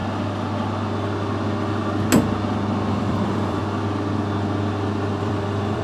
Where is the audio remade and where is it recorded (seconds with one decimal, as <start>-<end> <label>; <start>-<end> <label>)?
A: 0.0-2.9 recorded; 2.9-3.6 remade; 3.6-5.2 recorded; 5.2-5.8 remade